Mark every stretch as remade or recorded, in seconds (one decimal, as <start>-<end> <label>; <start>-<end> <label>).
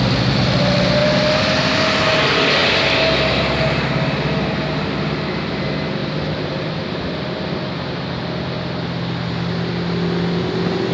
0.0-10.9 recorded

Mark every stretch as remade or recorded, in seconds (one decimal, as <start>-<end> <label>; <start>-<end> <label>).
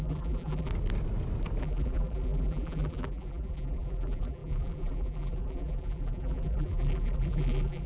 0.0-0.7 remade; 0.7-1.6 recorded; 1.6-7.9 remade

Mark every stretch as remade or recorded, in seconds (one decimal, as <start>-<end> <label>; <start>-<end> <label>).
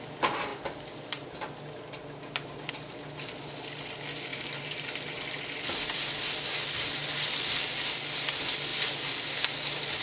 0.0-0.5 recorded; 0.5-2.7 remade; 2.7-4.3 recorded; 4.3-5.2 remade; 5.2-8.7 recorded; 8.7-9.4 remade; 9.4-10.0 recorded